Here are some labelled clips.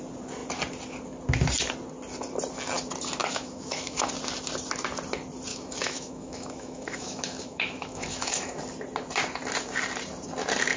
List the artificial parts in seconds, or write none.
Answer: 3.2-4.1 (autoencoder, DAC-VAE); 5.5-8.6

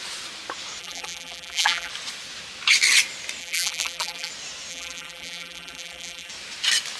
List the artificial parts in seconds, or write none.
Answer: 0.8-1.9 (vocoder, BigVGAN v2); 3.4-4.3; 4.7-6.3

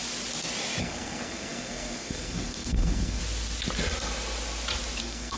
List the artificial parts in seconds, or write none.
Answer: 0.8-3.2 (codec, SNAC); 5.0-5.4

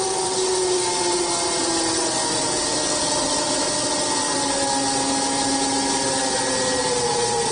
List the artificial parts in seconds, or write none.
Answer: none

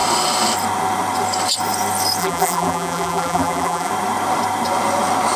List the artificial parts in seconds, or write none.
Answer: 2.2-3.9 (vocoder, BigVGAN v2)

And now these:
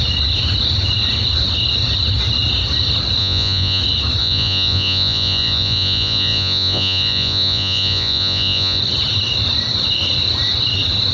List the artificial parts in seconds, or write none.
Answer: 3.2-3.8 (vocoder, Vocos); 4.2-8.8

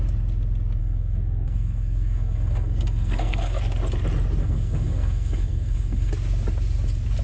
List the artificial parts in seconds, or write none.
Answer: 0.8-3.6 (codec, SNAC); 4.4-6.1